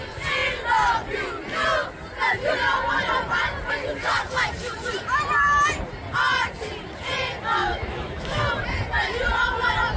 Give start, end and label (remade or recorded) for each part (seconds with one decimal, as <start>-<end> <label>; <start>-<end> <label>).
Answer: 0.0-7.7 recorded; 7.7-8.4 remade; 8.4-10.0 recorded

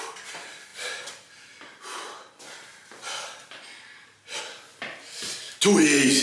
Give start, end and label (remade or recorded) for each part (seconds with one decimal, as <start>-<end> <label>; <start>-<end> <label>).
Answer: 0.0-6.2 recorded

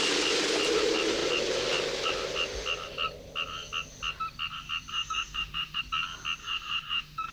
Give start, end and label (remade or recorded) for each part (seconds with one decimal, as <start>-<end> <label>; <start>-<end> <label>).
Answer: 0.0-4.9 recorded; 4.9-5.8 remade; 5.8-6.4 recorded; 6.4-7.3 remade

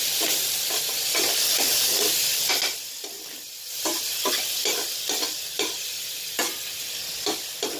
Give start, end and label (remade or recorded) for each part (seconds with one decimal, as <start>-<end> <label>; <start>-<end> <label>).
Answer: 0.0-7.8 recorded

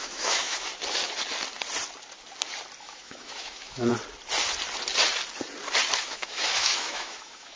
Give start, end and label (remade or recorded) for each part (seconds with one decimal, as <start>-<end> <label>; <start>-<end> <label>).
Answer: 0.0-0.7 remade; 0.7-2.8 recorded; 2.8-3.9 remade; 3.9-5.9 recorded; 5.9-7.6 remade

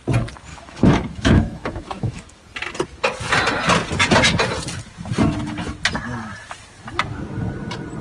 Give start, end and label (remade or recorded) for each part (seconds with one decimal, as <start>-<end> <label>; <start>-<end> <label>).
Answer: 0.0-0.5 recorded; 0.5-2.4 remade; 2.4-8.0 recorded